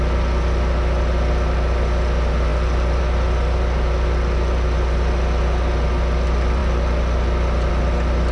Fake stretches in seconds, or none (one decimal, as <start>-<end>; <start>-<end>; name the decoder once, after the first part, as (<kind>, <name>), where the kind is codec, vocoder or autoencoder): none